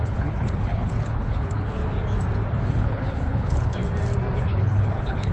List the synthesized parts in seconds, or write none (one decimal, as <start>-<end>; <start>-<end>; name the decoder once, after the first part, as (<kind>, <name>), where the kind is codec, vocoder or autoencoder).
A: 0.0-1.8 (codec, HILCodec); 2.7-3.8; 4.4-5.3